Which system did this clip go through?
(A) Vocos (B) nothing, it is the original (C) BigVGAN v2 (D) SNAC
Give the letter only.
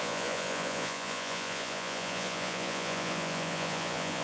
A